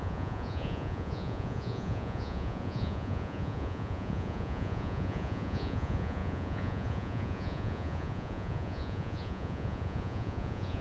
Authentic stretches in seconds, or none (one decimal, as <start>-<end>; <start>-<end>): none